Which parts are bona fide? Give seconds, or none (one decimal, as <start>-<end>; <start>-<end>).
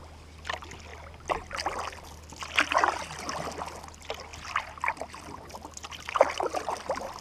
0.0-7.2